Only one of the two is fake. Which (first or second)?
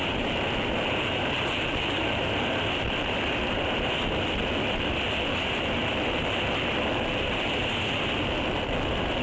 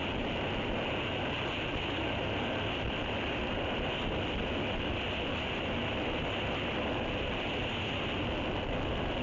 first